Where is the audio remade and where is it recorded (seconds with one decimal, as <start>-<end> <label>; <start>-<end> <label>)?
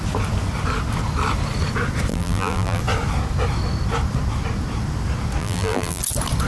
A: 0.0-2.1 recorded; 2.1-2.8 remade; 2.8-5.4 recorded; 5.4-6.0 remade; 6.0-6.5 recorded